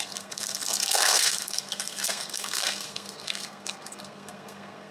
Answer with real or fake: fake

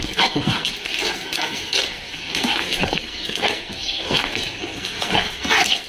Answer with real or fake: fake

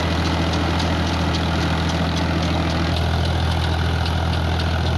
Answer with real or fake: real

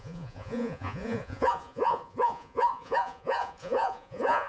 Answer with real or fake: fake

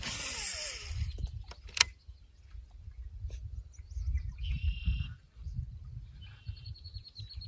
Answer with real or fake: real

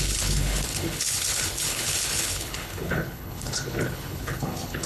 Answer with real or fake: fake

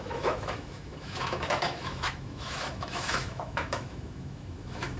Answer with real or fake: fake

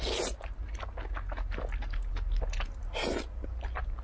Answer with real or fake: real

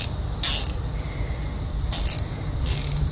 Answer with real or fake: real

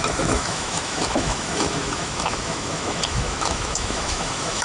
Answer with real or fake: fake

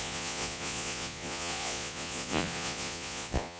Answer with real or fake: fake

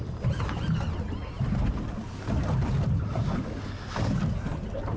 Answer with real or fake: real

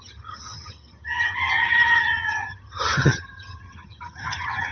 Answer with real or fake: fake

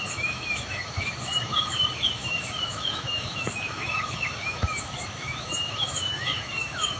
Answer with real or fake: fake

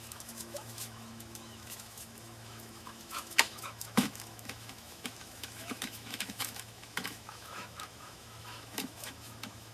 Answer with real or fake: fake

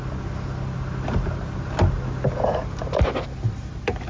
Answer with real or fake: real